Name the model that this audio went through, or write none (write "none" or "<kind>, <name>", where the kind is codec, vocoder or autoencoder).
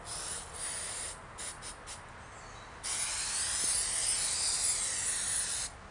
none